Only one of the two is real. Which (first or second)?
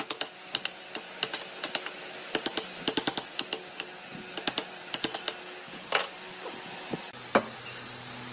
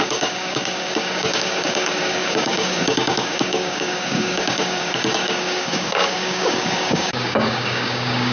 first